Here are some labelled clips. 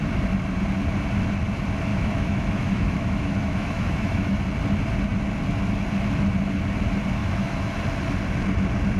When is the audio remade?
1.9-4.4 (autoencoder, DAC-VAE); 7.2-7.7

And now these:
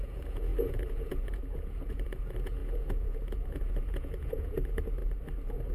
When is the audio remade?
0.0-5.0 (vocoder, Vocos)

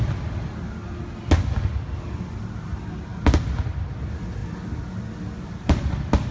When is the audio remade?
none

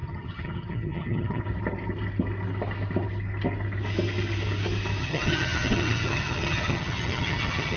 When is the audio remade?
0.0-1.4 (vocoder, HiFi-GAN); 5.0-7.8

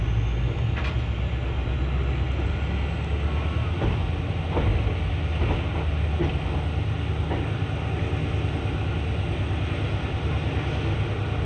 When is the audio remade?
none

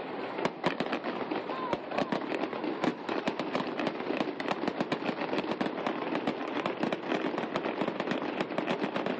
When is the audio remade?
2.9-3.6 (vocoder, BigVGAN v2)

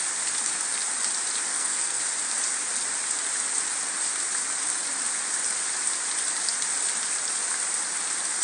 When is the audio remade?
1.5-2.0 (codec, SNAC)

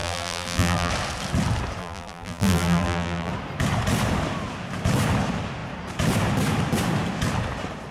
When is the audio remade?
0.0-0.9 (vocoder, BigVGAN v2); 1.8-3.3